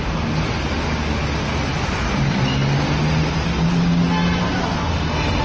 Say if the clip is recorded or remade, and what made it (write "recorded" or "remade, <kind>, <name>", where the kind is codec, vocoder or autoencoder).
recorded